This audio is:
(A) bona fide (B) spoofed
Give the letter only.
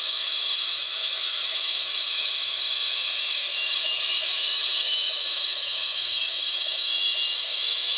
B